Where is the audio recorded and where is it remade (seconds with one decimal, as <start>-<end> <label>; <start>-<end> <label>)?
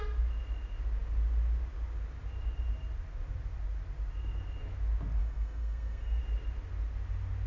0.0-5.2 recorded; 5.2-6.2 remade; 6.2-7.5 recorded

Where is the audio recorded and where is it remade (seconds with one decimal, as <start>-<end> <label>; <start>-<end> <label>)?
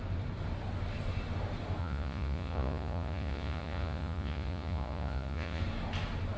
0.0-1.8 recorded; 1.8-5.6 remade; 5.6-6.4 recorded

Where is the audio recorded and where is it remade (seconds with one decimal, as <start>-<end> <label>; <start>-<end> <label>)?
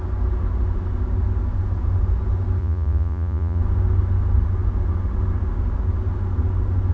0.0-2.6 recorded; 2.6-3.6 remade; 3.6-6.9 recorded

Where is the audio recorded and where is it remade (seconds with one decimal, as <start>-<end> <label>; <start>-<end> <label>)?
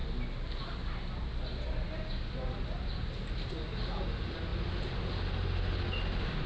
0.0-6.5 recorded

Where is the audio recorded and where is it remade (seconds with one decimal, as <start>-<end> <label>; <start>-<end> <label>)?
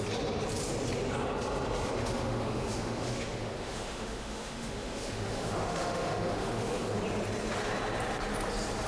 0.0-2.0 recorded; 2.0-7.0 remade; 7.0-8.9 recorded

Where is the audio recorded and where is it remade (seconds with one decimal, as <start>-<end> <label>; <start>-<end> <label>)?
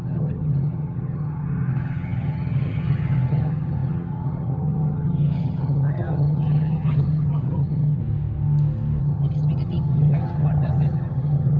0.0-8.0 remade; 8.0-9.0 recorded; 9.0-11.6 remade